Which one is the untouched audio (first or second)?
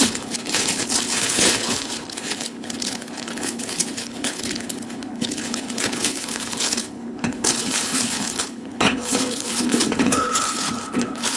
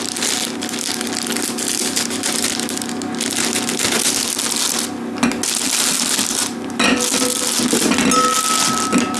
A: second